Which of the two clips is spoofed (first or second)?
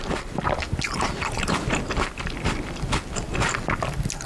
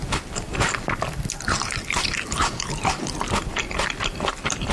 second